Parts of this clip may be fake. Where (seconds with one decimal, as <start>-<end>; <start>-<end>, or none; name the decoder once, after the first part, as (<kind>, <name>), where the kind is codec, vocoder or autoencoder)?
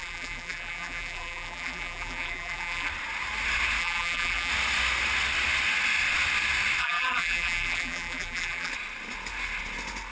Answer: 0.0-2.9 (vocoder, BigVGAN v2); 3.8-4.5; 6.8-8.7